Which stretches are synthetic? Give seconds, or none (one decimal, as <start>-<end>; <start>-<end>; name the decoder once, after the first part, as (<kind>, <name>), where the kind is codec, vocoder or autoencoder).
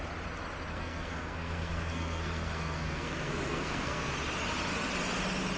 0.7-4.1 (codec, SNAC)